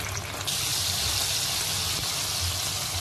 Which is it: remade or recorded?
recorded